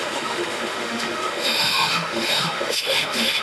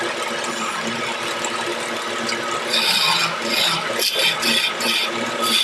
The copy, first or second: first